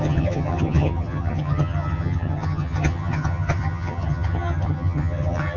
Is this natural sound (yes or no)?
no